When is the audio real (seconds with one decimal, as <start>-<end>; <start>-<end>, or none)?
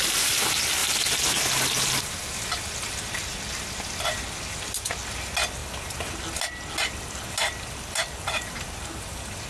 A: 0.0-9.5